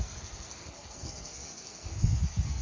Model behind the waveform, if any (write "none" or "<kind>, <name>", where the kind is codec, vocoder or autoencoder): codec, SNAC